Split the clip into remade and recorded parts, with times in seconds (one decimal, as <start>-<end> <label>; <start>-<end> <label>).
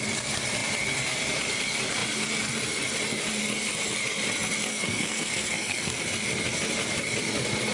0.0-4.7 recorded; 4.7-6.0 remade; 6.0-7.7 recorded